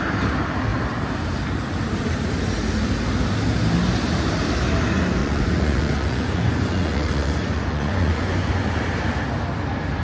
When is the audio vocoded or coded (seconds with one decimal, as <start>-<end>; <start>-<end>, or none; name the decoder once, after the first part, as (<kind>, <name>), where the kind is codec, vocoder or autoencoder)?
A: 5.2-8.8 (vocoder, Vocos)